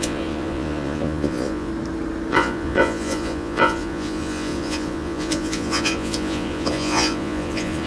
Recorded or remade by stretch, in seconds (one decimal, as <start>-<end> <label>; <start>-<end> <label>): 0.0-1.7 remade; 1.7-2.3 recorded; 2.3-7.9 remade